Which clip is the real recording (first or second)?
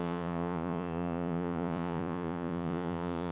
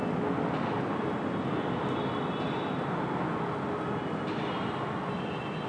second